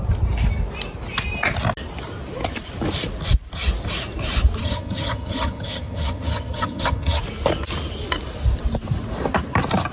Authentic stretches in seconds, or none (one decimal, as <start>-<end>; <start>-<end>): 0.0-4.6; 7.2-9.9